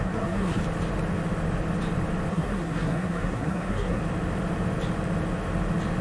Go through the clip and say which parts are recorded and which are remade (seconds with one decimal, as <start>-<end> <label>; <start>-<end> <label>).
0.0-0.6 remade; 0.6-2.3 recorded; 2.3-4.0 remade; 4.0-6.0 recorded

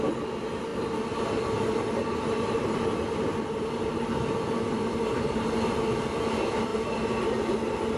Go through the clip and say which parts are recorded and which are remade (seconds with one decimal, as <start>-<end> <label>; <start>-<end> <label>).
0.0-8.0 recorded